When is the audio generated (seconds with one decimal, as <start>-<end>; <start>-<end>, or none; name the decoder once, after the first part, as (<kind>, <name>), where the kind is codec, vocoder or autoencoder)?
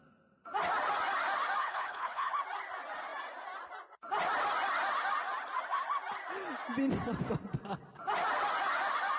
1.6-2.3 (codec, HILCodec)